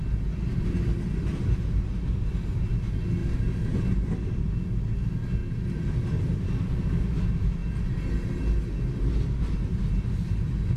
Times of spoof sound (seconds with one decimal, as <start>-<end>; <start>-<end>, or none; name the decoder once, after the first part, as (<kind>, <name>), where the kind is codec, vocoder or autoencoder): none